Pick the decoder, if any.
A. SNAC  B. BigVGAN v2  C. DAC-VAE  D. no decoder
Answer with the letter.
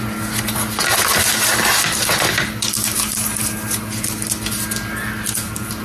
D